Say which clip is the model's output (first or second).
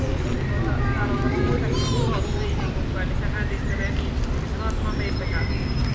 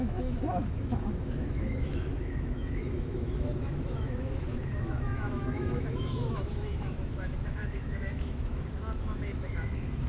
second